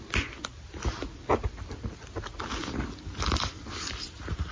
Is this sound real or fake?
real